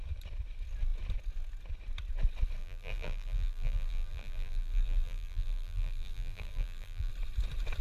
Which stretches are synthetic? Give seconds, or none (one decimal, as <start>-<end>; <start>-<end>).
2.6-7.1